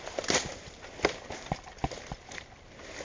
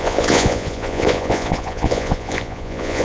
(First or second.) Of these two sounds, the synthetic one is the second